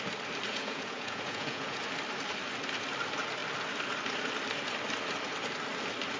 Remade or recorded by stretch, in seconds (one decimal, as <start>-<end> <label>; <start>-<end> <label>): 0.0-0.5 recorded; 0.5-1.8 remade; 1.8-6.2 recorded